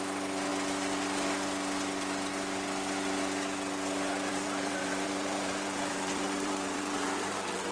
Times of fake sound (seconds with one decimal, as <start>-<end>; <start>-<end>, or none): 4.3-7.7